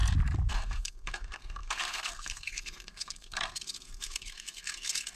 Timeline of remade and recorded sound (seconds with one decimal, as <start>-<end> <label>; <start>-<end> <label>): 0.0-0.5 recorded; 0.5-5.2 remade